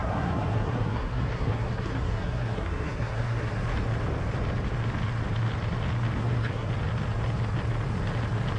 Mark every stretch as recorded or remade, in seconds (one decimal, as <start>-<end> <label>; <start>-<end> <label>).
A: 0.0-3.5 remade; 3.5-6.2 recorded; 6.2-6.7 remade; 6.7-8.6 recorded